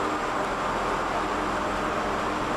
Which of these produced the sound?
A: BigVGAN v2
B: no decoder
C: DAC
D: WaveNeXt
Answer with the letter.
B